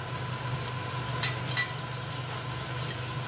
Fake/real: real